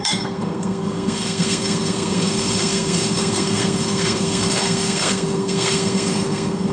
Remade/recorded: remade